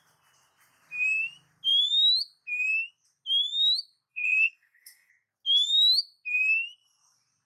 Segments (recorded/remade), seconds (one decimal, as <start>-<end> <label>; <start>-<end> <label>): 0.0-4.1 recorded; 4.1-5.1 remade; 5.1-7.5 recorded